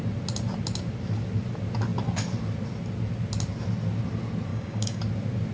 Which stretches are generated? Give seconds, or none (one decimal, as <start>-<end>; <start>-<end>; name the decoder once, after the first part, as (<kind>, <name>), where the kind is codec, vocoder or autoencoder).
4.5-5.0 (codec, DAC)